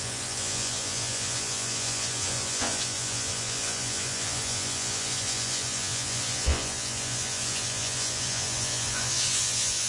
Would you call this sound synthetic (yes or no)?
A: yes